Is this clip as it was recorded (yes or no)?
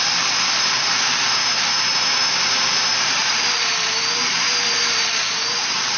no